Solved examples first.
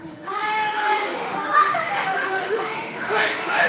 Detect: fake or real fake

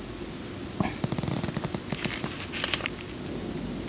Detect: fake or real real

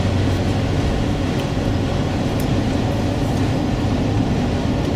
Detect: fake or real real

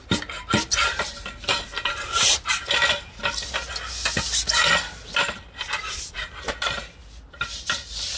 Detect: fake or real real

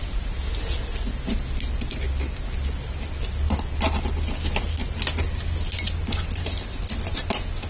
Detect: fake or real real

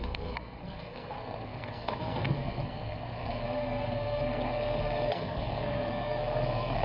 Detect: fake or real fake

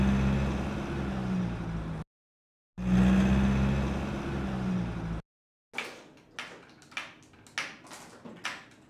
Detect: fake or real real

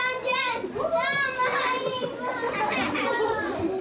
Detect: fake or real real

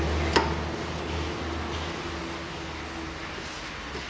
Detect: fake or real real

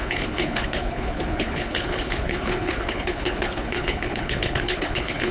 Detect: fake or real fake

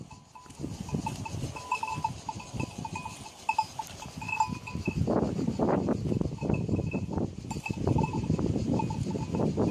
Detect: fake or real real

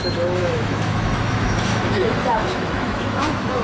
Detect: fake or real fake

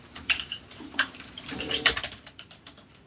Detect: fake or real fake